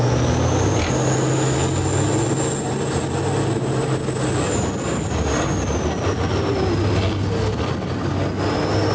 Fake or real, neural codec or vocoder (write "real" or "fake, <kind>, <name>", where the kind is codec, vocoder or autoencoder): real